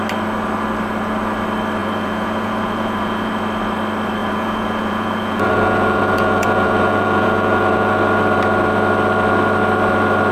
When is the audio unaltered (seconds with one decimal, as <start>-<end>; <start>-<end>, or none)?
0.0-1.8; 3.3-4.2; 8.0-10.3